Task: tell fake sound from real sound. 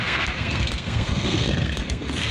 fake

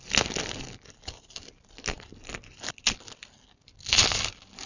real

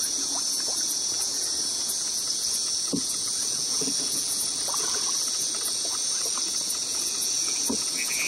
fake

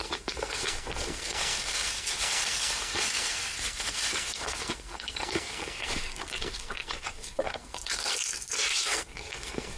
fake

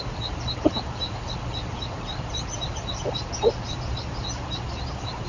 real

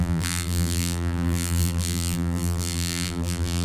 fake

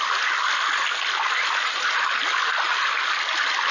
real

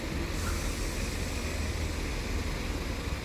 real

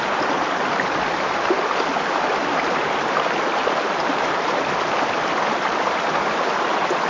real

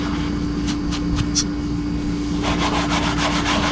real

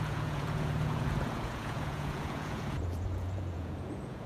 fake